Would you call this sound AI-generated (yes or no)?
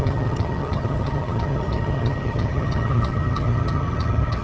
yes